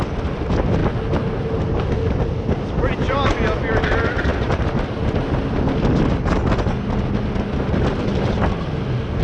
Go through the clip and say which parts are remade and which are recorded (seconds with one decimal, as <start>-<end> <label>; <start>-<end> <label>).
0.0-9.2 recorded